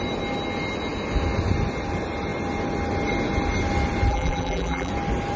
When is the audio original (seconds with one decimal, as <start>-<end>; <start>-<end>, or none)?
0.0-4.1; 4.9-5.4